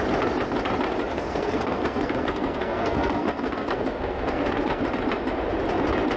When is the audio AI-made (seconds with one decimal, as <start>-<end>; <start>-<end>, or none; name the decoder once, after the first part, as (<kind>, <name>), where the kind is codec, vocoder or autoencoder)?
1.1-4.8 (codec, SNAC)